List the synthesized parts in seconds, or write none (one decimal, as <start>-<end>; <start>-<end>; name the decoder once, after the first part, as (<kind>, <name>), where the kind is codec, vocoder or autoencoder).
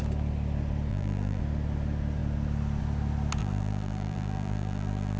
0.9-1.4 (vocoder, BigVGAN v2); 3.4-5.2